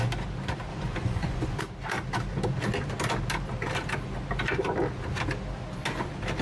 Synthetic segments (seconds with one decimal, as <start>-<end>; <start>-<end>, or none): 0.7-1.6